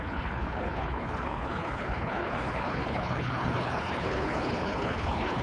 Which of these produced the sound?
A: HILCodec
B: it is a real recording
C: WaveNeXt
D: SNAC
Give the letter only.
A